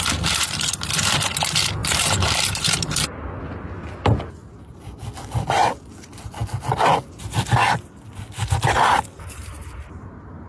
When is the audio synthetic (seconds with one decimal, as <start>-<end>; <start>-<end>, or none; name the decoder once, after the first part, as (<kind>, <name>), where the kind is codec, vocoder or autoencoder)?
1.8-3.0 (vocoder, BigVGAN v2)